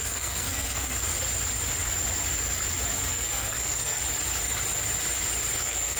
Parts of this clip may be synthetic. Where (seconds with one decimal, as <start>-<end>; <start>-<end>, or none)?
0.0-1.1; 3.1-4.0; 5.6-6.0